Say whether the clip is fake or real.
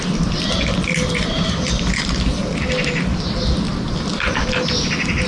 real